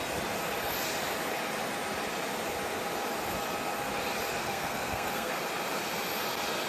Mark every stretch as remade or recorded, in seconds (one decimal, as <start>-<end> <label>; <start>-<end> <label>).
0.0-4.4 recorded; 4.4-5.3 remade; 5.3-6.7 recorded